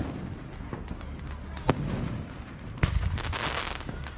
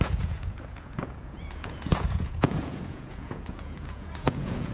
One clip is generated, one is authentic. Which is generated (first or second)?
second